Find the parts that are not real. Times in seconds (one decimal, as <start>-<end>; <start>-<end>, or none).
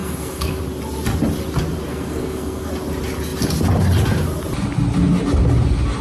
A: 0.0-0.6; 1.9-2.7